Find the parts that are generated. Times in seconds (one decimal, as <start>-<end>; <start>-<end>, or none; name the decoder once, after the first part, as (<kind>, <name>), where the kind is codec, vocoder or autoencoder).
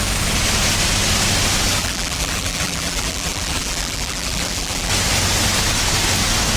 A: 1.8-4.9 (vocoder, BigVGAN v2)